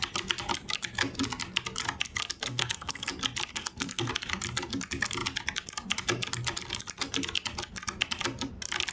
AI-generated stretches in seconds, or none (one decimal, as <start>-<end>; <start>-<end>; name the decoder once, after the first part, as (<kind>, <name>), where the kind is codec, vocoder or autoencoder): 2.5-3.1 (codec, SNAC); 3.5-4.1